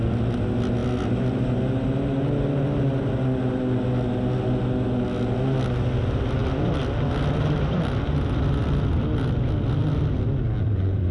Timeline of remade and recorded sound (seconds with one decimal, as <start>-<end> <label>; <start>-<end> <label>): 0.0-11.1 recorded